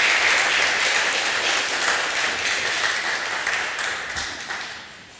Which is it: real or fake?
real